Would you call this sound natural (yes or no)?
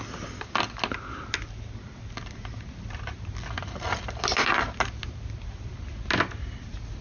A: yes